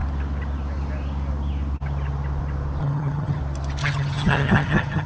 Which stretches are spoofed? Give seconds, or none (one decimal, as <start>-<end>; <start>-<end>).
2.8-3.4; 3.8-5.1